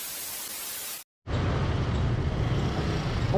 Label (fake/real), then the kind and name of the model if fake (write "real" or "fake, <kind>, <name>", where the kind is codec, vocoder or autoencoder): real